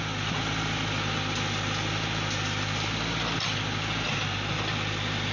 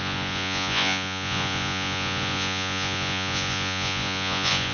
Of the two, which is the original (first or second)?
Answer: first